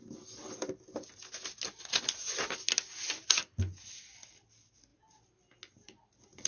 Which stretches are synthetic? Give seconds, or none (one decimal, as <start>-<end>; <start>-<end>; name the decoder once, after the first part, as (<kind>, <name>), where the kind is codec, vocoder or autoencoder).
none